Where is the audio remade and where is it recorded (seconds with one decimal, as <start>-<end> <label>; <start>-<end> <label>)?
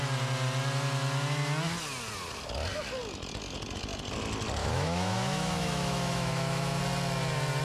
0.0-4.6 recorded; 4.6-6.8 remade; 6.8-7.6 recorded